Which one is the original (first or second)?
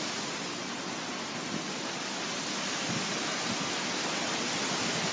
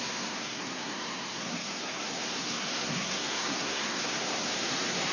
first